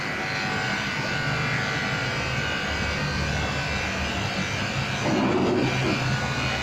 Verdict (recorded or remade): recorded